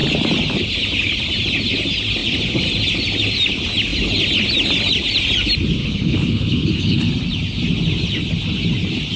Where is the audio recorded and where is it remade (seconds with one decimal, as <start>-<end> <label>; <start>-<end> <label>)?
0.0-5.8 recorded; 5.8-7.1 remade; 7.1-9.2 recorded